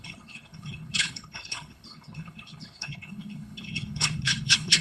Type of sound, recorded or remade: remade